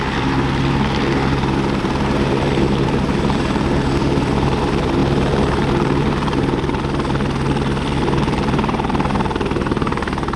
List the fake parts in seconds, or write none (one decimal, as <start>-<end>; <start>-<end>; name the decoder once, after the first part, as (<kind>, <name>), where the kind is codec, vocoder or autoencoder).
0.0-6.7 (vocoder, BigVGAN v2); 8.2-10.4